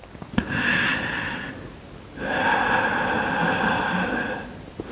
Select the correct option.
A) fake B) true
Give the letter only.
B